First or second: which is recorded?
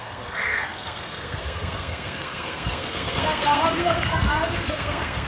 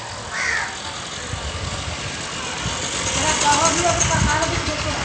second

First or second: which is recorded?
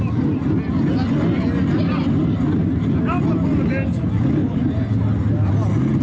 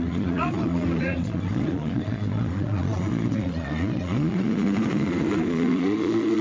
first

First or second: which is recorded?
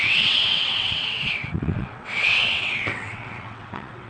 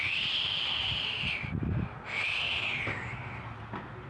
second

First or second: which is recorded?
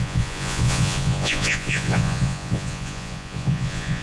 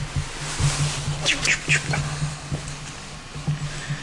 second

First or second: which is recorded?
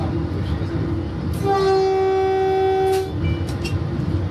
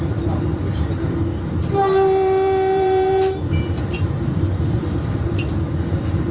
first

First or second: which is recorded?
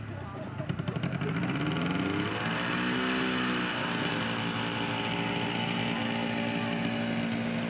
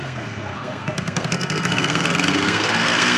first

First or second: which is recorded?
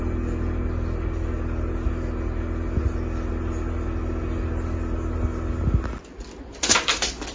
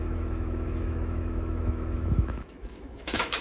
first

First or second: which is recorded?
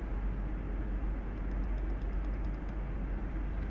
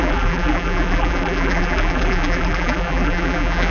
first